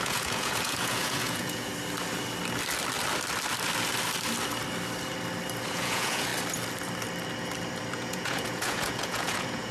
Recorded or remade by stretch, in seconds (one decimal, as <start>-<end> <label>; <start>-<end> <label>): 0.0-1.7 remade; 1.7-5.7 recorded; 5.7-6.3 remade; 6.3-7.9 recorded; 7.9-9.7 remade